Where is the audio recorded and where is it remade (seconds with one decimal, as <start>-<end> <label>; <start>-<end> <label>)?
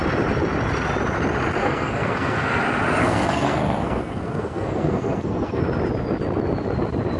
0.0-1.6 recorded; 1.6-2.6 remade; 2.6-3.0 recorded; 3.0-5.6 remade; 5.6-7.2 recorded